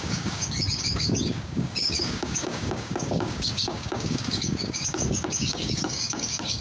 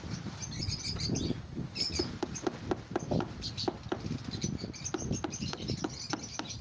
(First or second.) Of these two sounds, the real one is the second